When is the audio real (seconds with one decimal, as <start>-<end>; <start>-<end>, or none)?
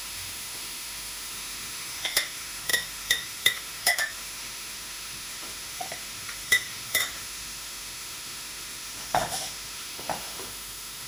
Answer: none